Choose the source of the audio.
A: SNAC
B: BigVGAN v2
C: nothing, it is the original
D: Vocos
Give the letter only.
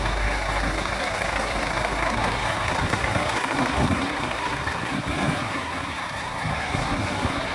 A